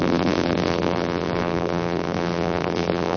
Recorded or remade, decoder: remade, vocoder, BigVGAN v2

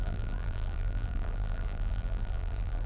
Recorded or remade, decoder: remade, vocoder, BigVGAN v2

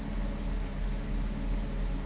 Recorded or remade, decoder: recorded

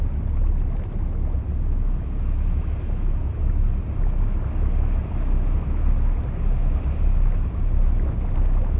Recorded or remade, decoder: recorded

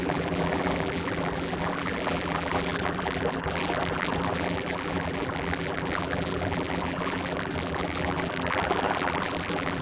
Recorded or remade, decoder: remade, vocoder, BigVGAN v2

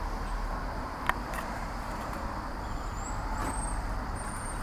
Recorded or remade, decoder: recorded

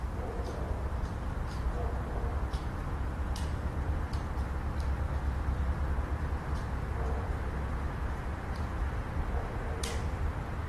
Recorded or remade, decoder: remade, vocoder, BigVGAN v2